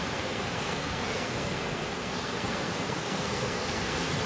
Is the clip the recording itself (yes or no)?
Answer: no